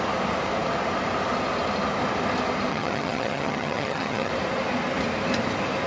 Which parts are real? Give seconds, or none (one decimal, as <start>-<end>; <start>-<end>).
0.0-2.7; 4.3-5.9